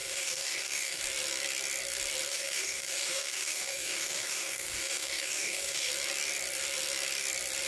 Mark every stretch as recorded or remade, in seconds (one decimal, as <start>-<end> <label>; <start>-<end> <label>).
0.0-1.0 remade; 1.0-2.3 recorded; 2.3-5.9 remade; 5.9-7.7 recorded

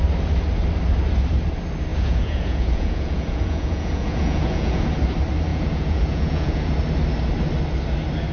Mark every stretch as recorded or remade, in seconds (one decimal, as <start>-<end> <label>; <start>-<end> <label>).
0.0-1.9 recorded; 1.9-4.8 remade; 4.8-5.5 recorded; 5.5-6.7 remade; 6.7-8.3 recorded